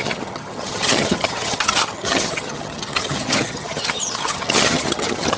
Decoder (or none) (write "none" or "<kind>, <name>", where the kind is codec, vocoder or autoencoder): vocoder, HiFi-GAN